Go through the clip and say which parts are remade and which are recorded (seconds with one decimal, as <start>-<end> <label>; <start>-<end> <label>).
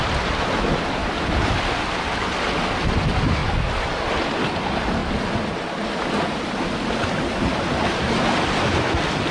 0.0-9.3 recorded